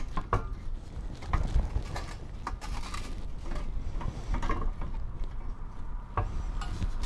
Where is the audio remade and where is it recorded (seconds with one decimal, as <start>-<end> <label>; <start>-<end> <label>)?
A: 0.0-7.1 recorded